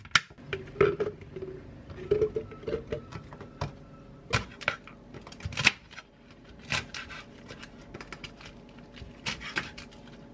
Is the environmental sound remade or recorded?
recorded